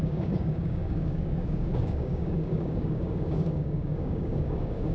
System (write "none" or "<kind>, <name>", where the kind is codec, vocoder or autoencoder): codec, DAC